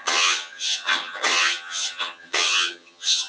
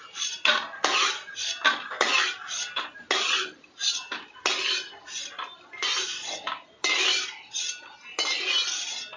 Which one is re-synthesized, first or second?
first